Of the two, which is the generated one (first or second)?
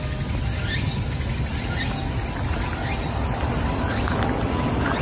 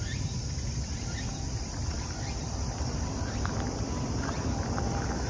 second